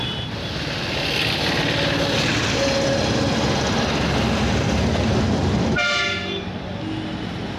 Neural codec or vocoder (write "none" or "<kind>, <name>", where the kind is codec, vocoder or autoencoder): none